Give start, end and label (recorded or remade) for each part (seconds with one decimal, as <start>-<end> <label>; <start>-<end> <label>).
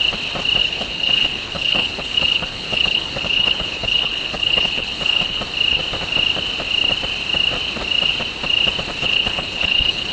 0.0-0.6 recorded; 0.6-5.4 remade; 5.4-9.0 recorded; 9.0-10.1 remade